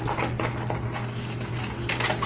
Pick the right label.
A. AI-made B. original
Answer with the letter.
B